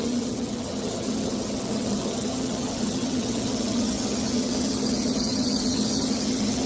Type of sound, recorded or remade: remade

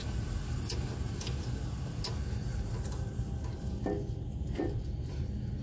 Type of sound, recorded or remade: recorded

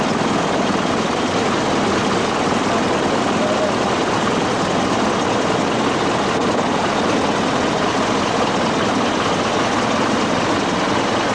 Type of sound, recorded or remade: recorded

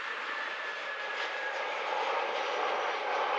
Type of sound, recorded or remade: remade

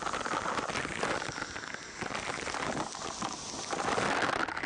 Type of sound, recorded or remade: recorded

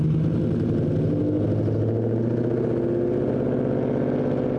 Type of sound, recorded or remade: recorded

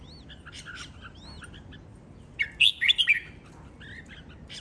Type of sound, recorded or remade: recorded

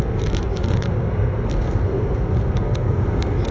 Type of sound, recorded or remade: remade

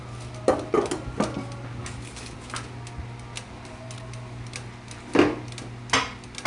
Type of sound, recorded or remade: recorded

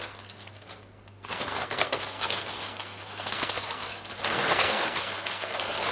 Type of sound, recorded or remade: remade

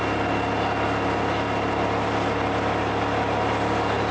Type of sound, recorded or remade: recorded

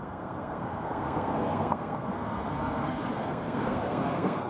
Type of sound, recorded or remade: remade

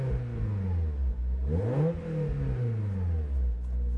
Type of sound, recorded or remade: recorded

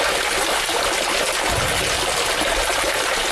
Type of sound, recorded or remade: recorded